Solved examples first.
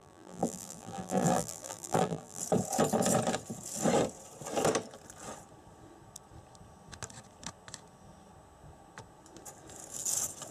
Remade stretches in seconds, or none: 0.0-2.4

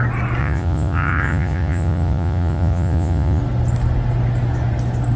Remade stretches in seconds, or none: 0.4-3.4